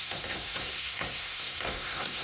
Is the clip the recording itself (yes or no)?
no